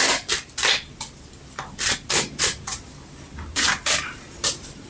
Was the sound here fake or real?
real